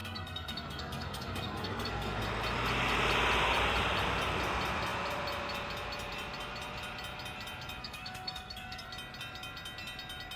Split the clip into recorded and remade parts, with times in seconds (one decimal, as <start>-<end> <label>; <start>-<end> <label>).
0.0-2.2 remade; 2.2-7.8 recorded; 7.8-8.9 remade; 8.9-10.4 recorded